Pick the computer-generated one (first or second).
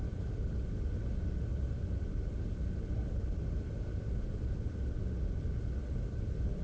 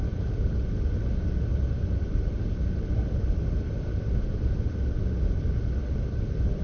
second